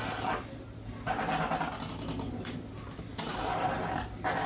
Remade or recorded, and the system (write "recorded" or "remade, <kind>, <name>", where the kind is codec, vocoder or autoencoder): recorded